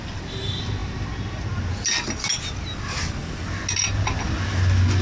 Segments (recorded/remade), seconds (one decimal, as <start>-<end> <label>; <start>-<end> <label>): 0.0-5.0 recorded